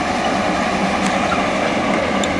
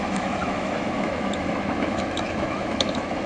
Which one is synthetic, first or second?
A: second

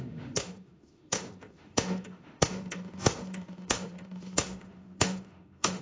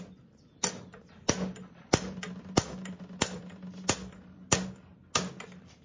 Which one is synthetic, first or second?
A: first